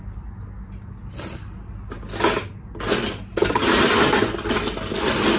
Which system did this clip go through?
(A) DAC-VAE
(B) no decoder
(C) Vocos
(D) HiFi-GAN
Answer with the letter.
B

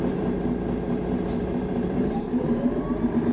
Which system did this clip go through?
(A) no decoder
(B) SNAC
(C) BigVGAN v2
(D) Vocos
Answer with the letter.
C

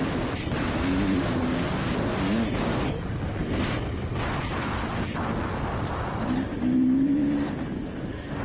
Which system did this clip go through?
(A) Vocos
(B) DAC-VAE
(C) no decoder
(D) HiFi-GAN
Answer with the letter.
C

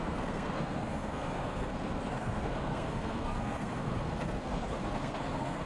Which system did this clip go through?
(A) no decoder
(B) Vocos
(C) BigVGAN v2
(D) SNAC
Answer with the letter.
D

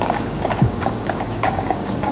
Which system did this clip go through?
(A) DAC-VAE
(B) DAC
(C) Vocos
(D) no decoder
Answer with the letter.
B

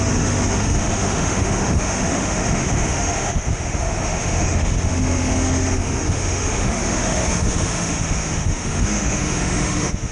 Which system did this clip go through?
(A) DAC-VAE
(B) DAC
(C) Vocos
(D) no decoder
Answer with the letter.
A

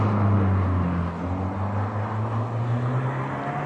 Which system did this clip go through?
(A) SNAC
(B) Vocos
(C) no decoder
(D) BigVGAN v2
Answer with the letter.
C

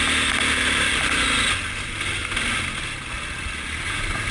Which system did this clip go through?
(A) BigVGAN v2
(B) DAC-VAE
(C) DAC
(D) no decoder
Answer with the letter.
D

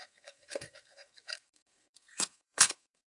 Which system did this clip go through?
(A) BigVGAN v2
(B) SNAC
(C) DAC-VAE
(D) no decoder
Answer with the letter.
B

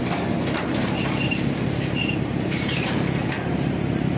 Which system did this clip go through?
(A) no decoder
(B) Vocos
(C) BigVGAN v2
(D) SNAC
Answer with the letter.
C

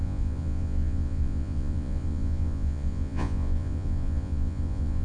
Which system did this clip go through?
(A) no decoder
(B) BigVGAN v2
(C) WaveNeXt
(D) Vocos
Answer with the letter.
D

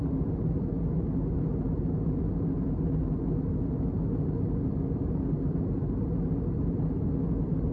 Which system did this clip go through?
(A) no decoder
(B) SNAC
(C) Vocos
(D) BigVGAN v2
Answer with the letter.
A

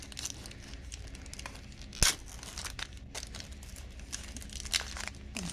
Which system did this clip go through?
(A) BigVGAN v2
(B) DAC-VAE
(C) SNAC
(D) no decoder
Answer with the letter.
D